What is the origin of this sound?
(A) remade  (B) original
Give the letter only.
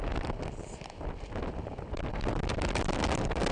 B